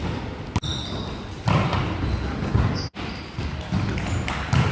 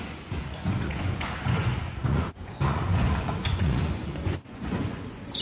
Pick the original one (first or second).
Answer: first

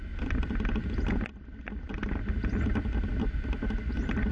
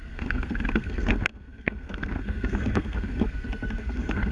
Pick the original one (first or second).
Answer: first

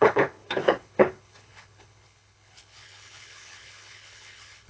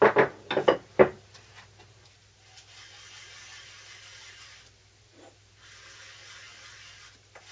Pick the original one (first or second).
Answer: second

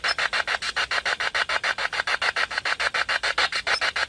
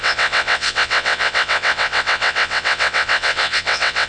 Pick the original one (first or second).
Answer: first